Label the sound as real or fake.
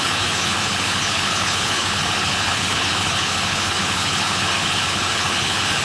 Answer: fake